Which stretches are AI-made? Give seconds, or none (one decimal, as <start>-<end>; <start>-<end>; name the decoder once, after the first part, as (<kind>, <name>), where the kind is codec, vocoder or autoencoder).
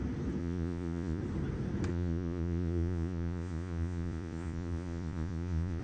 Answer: 0.4-1.2 (vocoder, Vocos); 1.9-5.8